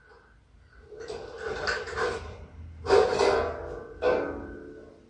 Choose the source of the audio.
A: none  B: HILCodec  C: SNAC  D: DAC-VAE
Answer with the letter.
A